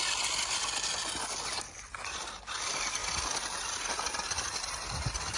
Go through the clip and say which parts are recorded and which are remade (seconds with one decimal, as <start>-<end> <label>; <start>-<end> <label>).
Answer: 0.0-5.4 recorded